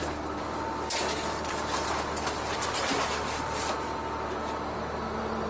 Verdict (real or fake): real